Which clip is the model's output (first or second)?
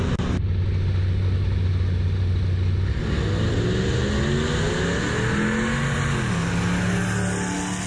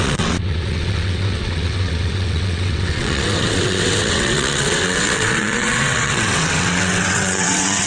second